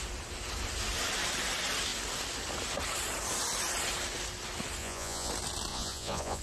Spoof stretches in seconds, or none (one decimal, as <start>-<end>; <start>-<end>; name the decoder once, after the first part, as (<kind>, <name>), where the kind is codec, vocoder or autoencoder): 4.8-5.3 (vocoder, Vocos); 5.7-6.4